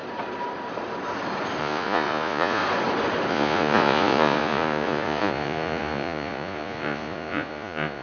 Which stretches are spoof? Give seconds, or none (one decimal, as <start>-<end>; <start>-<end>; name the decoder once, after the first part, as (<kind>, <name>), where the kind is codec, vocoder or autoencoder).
1.6-2.6 (vocoder, Vocos); 3.3-8.0